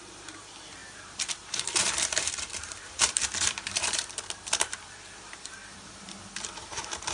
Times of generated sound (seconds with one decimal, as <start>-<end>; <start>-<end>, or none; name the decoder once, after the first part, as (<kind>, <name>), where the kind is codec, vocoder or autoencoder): 0.0-7.1 (vocoder, BigVGAN v2)